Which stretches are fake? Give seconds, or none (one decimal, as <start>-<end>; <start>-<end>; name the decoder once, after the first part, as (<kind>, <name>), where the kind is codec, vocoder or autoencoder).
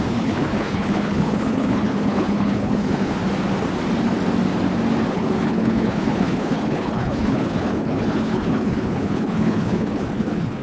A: 0.0-3.2 (codec, HILCodec); 5.1-10.6